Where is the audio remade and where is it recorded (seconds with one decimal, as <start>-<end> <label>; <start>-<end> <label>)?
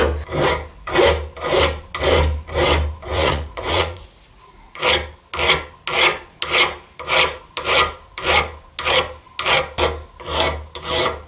0.0-3.1 recorded; 3.1-4.8 remade; 4.8-11.3 recorded